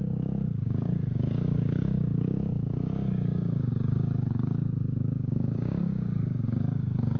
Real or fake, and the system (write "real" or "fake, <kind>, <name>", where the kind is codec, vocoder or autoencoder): fake, codec, DAC